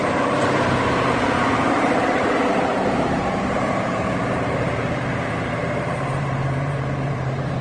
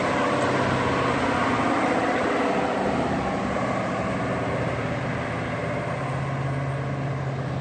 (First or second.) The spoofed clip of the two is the first